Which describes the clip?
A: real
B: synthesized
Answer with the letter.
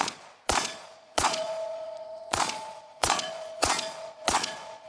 B